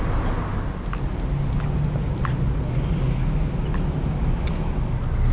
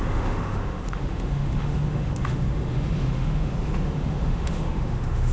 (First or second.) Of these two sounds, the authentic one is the first